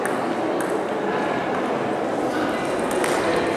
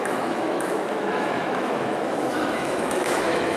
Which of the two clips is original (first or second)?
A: first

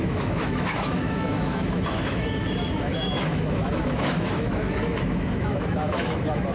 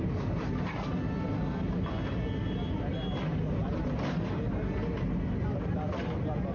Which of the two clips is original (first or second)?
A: second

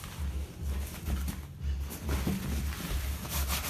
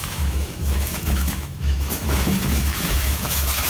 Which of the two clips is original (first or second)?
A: first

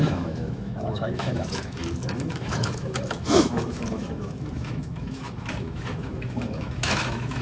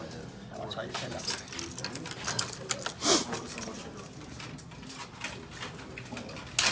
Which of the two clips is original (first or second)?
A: second